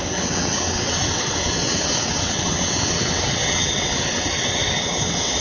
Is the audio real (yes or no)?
no